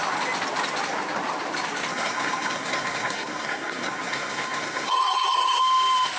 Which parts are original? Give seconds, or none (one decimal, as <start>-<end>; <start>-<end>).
0.0-1.9; 5.6-6.2